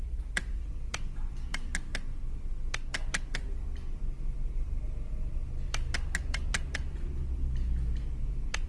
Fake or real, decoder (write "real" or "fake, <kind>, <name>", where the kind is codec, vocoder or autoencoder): real